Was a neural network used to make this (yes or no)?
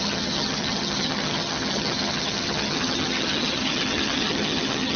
yes